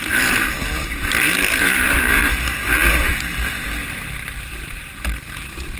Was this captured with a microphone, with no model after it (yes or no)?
no